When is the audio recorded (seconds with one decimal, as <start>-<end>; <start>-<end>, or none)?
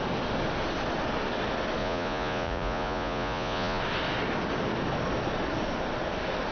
0.0-1.8; 3.8-6.5